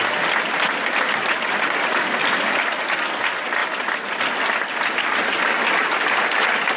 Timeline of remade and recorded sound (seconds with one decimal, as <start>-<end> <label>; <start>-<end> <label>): 0.0-6.8 recorded